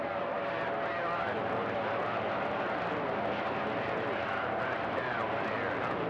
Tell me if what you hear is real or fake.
real